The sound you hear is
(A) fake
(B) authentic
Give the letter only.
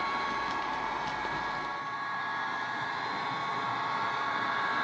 B